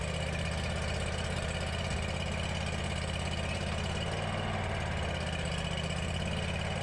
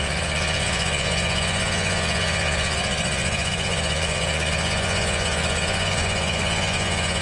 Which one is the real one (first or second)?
first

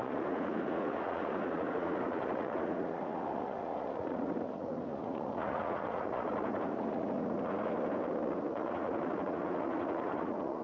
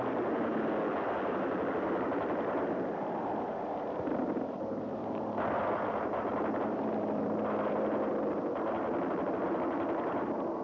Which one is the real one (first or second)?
second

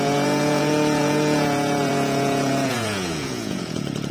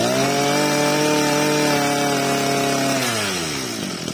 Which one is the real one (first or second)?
second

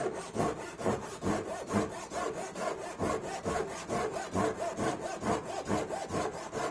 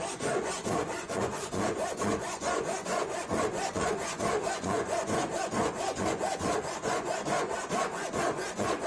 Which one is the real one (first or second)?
first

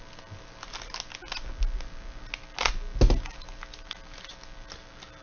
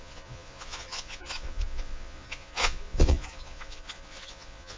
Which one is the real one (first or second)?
first